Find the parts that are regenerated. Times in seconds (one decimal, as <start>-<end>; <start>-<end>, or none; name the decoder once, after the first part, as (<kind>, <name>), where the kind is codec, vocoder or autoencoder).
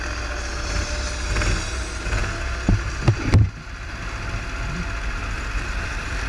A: none